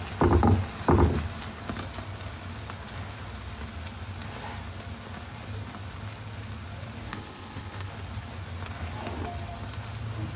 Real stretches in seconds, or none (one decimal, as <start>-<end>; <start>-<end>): 0.0-7.1; 7.9-10.4